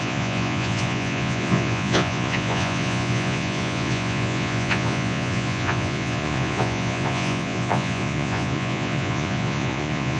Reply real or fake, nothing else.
fake